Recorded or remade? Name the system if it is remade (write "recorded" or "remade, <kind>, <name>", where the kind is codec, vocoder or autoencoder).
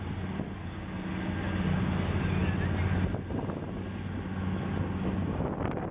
recorded